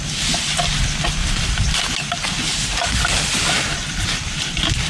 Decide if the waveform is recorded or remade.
recorded